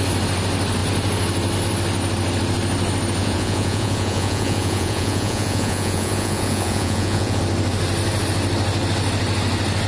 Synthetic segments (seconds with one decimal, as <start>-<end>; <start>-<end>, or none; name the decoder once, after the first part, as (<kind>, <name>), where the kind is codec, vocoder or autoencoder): 3.2-7.4 (vocoder, Vocos)